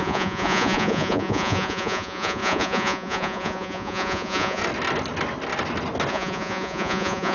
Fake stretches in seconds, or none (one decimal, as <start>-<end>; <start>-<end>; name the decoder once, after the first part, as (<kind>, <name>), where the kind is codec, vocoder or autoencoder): 0.0-4.6 (vocoder, Vocos); 6.1-7.3